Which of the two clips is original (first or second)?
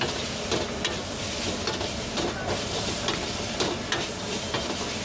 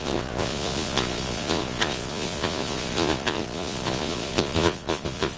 first